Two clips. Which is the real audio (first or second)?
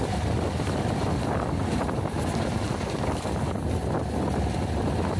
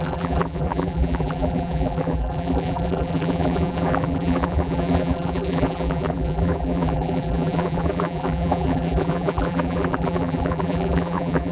first